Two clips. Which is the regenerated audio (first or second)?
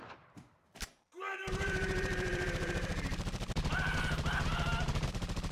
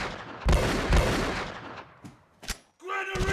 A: first